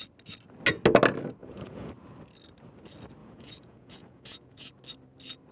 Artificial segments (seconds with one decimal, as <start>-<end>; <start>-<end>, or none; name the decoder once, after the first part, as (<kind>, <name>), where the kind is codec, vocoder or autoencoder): 1.4-1.9 (vocoder, Vocos); 3.2-4.7